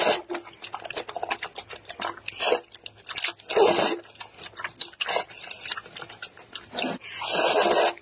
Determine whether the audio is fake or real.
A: real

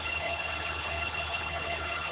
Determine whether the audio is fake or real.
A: fake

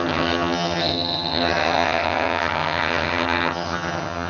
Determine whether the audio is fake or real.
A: fake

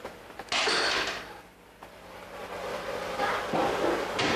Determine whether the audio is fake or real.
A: real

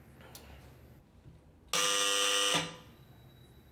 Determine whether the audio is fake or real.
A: real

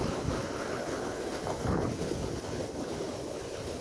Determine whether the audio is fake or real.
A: fake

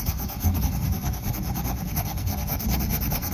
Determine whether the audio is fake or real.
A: fake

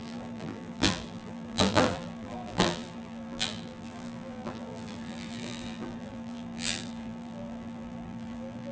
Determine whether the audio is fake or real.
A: fake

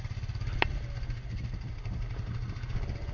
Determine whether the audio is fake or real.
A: real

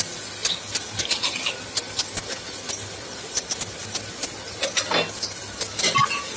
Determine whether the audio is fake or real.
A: real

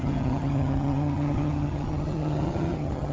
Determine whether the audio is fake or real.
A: fake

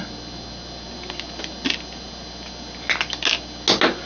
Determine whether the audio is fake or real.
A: real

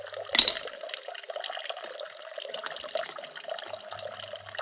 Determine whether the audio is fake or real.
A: real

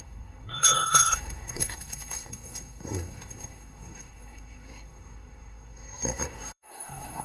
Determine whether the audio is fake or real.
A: fake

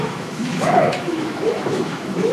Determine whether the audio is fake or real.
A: fake